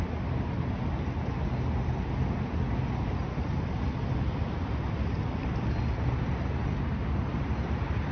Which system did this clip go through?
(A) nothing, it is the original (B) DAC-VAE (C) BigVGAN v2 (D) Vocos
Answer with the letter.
A